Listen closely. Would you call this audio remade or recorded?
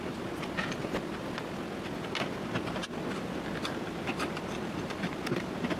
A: recorded